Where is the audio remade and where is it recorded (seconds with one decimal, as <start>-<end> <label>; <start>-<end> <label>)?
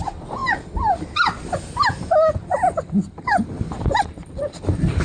0.0-0.4 remade; 0.4-3.4 recorded; 3.4-5.0 remade